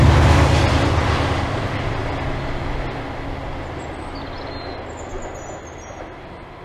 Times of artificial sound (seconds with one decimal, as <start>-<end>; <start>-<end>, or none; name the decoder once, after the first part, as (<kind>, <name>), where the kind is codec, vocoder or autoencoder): none